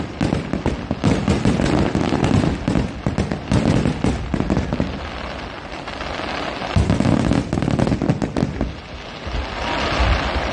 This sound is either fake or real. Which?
real